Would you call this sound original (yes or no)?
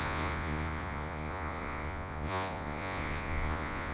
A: no